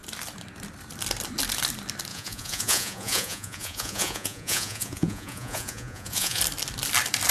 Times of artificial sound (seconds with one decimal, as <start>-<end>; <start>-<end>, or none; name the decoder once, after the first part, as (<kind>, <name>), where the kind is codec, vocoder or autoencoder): 2.1-6.4 (vocoder, Vocos)